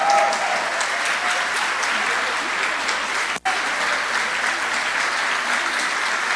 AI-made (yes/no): no